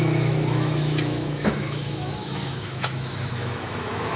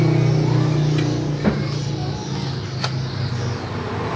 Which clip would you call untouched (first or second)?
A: second